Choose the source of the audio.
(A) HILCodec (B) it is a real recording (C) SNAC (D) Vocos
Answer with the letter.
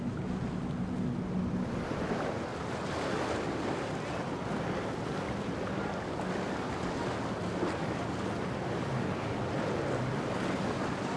B